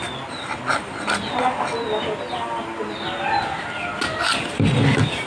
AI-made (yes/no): no